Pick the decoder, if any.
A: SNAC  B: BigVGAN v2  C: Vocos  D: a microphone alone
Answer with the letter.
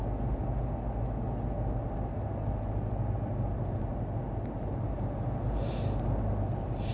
D